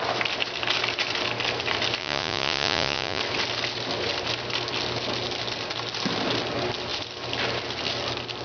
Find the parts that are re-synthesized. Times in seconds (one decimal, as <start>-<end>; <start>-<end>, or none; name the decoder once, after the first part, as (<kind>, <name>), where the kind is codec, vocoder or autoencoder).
2.0-3.2 (vocoder, Vocos)